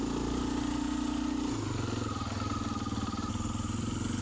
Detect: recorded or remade recorded